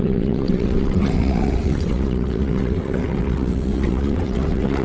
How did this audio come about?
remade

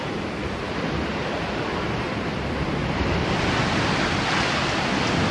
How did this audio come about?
recorded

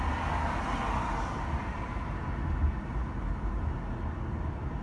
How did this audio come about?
recorded